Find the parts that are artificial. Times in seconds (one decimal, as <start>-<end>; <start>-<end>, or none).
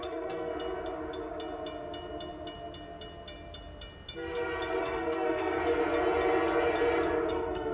0.0-0.5; 4.8-5.6; 7.3-7.7